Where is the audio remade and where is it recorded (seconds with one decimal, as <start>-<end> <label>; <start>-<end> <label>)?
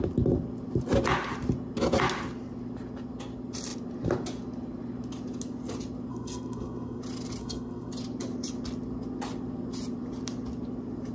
0.0-6.1 recorded; 6.1-7.0 remade; 7.0-7.4 recorded; 7.4-7.9 remade; 7.9-11.1 recorded